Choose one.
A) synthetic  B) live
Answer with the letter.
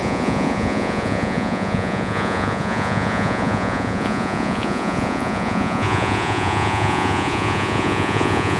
A